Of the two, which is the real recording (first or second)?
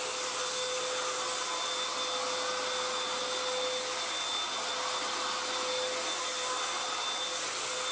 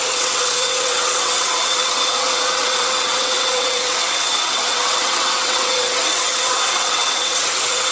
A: first